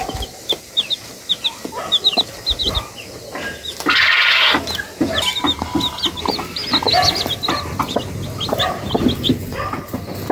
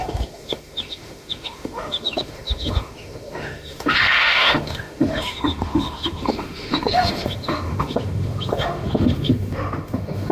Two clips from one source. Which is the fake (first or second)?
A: second